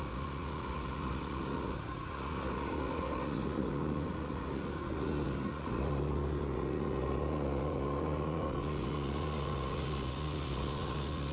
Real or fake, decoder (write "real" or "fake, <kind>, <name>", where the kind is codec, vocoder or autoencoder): fake, vocoder, Vocos